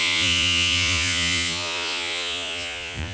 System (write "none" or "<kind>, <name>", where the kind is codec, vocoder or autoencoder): vocoder, Vocos